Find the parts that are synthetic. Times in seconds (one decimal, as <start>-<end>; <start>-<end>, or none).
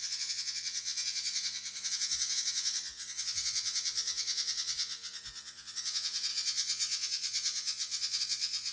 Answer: 0.0-8.7